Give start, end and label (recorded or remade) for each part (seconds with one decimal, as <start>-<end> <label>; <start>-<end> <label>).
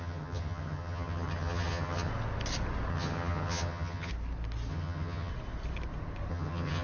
0.0-2.1 remade; 2.1-2.9 recorded; 2.9-4.1 remade; 4.1-4.7 recorded; 4.7-5.3 remade; 5.3-6.3 recorded; 6.3-6.8 remade